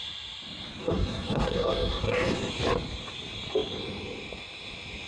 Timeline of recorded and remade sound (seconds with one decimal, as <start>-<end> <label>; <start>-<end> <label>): 0.0-0.8 recorded; 0.8-2.5 remade; 2.5-5.1 recorded